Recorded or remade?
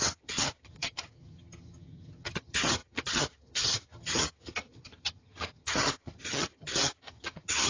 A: remade